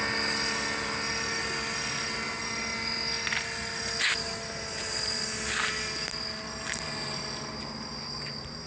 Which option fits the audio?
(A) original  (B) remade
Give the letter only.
A